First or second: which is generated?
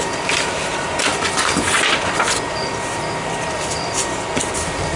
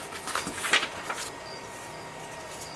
first